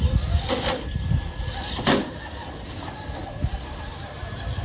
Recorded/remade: recorded